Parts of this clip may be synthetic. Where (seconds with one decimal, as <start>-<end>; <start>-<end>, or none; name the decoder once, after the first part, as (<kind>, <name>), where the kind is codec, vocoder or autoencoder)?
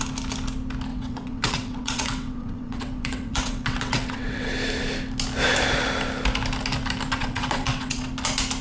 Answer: 0.9-4.5 (vocoder, WaveNeXt); 7.2-8.1